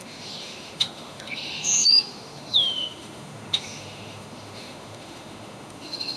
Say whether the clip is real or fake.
fake